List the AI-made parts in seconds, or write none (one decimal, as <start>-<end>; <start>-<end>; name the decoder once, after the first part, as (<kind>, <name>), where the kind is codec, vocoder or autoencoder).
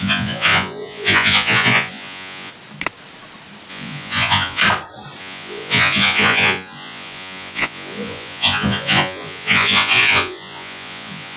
0.0-2.5 (vocoder, Vocos); 3.7-4.6; 5.2-11.4